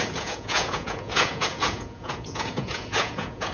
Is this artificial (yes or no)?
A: yes